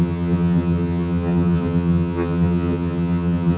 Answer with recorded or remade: remade